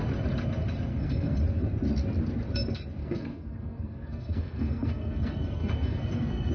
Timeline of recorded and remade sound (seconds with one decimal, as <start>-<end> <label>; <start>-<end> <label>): 0.0-0.9 recorded; 0.9-1.4 remade; 1.4-3.0 recorded; 3.0-6.5 remade